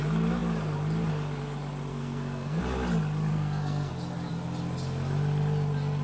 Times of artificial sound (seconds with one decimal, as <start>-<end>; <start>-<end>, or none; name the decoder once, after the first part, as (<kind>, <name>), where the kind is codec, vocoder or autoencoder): 1.9-2.6 (codec, SNAC); 3.3-3.9